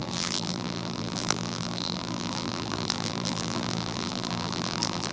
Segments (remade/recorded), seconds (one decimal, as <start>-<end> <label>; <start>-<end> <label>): 0.0-5.1 remade